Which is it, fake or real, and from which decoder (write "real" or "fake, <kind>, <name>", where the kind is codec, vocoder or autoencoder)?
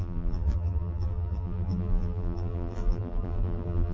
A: fake, vocoder, BigVGAN v2